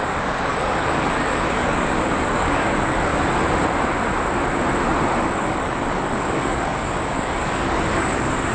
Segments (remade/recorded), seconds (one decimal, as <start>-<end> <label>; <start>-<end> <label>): 0.0-3.1 remade; 3.1-5.2 recorded; 5.2-8.5 remade